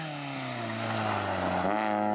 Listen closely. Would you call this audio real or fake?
real